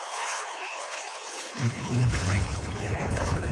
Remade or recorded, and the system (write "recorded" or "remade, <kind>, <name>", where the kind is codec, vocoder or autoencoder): remade, codec, HILCodec